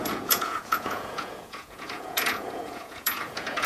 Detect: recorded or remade remade